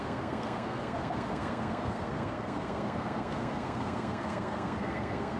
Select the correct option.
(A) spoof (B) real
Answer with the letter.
A